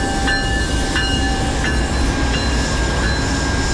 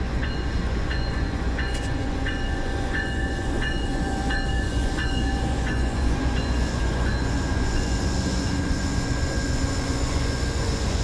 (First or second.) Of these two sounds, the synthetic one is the second